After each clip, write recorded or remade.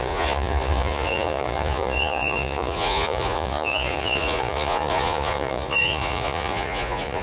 remade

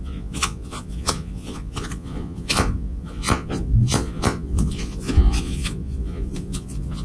remade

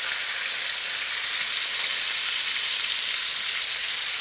recorded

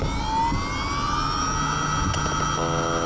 recorded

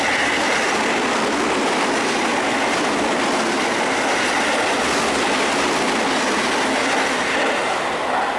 recorded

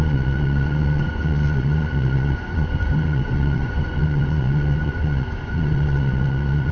remade